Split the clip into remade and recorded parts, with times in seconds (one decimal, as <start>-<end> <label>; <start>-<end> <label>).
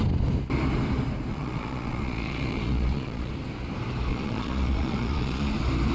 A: 0.0-1.3 recorded; 1.3-3.3 remade; 3.3-4.1 recorded; 4.1-5.5 remade; 5.5-5.9 recorded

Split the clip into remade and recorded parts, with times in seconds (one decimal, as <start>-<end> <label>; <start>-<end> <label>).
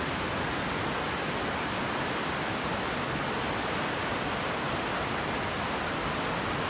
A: 0.0-6.7 recorded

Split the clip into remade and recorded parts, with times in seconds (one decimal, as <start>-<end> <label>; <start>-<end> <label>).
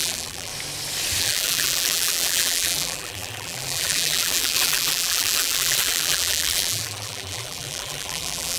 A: 0.0-0.5 remade; 0.5-1.2 recorded; 1.2-8.6 remade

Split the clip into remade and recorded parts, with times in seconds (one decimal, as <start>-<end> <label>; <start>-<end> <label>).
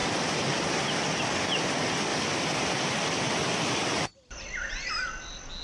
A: 0.0-1.2 remade; 1.2-2.1 recorded; 2.1-4.9 remade; 4.9-5.6 recorded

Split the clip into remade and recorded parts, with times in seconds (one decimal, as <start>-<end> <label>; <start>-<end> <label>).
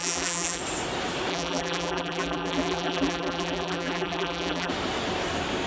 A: 0.0-0.6 remade; 0.6-1.3 recorded; 1.3-4.7 remade; 4.7-5.7 recorded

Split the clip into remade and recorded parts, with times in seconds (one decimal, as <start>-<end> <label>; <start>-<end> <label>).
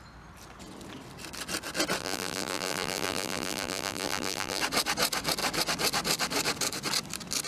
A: 0.0-2.0 recorded; 2.0-4.6 remade; 4.6-7.5 recorded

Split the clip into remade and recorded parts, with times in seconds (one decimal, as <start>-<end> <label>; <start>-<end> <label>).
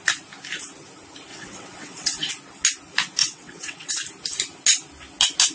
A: 0.0-1.3 recorded; 1.3-2.3 remade; 2.3-3.2 recorded; 3.2-3.9 remade; 3.9-5.5 recorded